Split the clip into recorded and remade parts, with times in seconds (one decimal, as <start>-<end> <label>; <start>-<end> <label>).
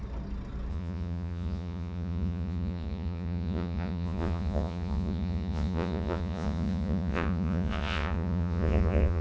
0.0-0.7 recorded; 0.7-9.2 remade